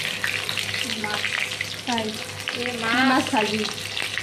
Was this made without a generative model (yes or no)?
yes